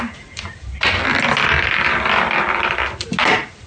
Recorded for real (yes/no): yes